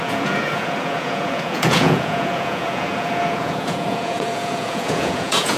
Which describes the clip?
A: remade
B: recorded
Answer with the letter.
A